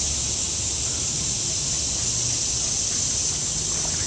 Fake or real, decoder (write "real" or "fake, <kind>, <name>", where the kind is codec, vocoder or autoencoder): real